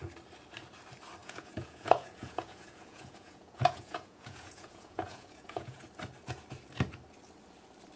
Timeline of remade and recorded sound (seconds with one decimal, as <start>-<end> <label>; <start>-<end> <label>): 0.0-1.2 recorded; 1.2-5.8 remade; 5.8-8.0 recorded